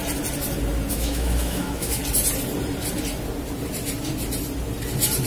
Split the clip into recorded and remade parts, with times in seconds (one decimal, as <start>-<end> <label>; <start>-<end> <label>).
0.0-0.9 recorded; 0.9-2.0 remade; 2.0-5.3 recorded